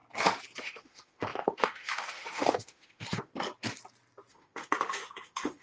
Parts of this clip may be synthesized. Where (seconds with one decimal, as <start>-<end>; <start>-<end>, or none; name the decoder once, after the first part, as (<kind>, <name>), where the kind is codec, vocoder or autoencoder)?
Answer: 0.6-3.3 (autoencoder, DAC-VAE); 4.3-5.6